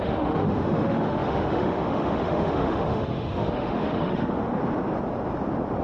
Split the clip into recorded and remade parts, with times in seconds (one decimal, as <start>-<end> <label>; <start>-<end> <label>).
0.0-4.6 remade; 4.6-5.8 recorded